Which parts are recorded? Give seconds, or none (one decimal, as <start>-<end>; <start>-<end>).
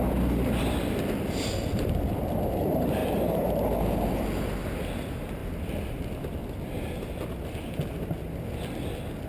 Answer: 0.0-3.0; 4.4-5.4; 6.0-6.4; 6.9-9.3